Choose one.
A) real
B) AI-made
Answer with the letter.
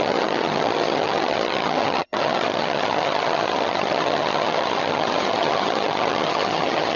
B